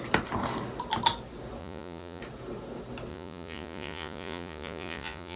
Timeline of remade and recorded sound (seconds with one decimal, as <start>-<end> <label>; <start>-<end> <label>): 0.0-1.6 recorded; 1.6-2.2 remade; 2.2-3.1 recorded; 3.1-5.4 remade